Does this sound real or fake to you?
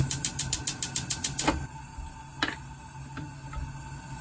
real